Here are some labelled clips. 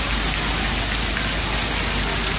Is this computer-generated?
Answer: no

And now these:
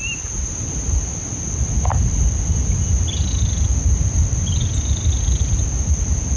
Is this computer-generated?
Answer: no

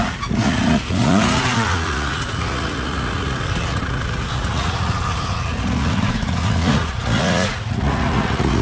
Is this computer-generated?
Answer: yes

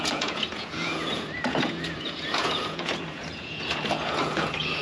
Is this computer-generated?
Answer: yes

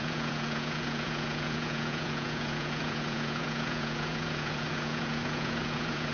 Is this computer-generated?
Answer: yes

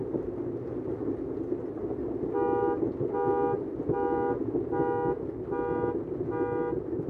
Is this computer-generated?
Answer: no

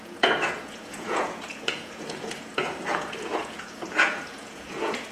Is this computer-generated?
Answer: yes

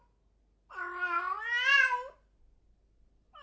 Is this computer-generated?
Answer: no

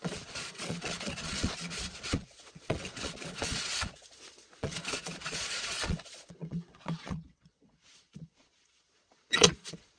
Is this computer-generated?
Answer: yes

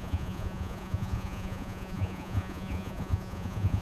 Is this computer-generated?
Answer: yes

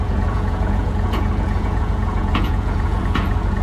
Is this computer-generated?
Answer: yes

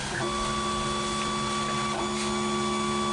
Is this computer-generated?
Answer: no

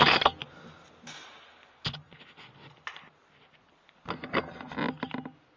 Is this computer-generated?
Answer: no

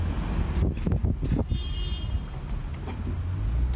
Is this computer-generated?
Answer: no